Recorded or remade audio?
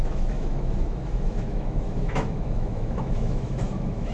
remade